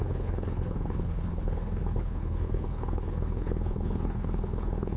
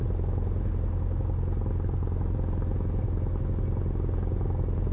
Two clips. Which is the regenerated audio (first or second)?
first